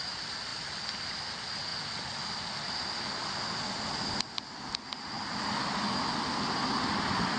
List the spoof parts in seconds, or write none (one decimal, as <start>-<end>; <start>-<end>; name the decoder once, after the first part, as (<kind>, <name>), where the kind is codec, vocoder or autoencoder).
none